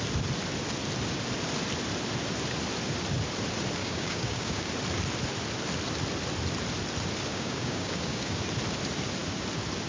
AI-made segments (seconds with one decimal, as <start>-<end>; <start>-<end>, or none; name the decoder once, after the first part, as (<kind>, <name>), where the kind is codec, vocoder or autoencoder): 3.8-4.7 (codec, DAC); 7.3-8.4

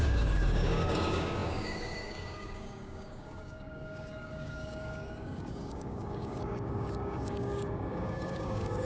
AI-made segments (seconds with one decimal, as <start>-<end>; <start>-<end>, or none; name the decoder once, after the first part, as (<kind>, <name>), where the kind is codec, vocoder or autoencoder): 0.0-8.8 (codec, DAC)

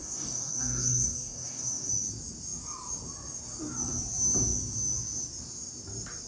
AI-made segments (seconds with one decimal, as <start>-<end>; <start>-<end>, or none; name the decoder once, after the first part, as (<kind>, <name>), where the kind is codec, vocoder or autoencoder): 0.0-1.9 (codec, DAC)